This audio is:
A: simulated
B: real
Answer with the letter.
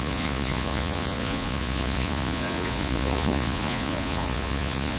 A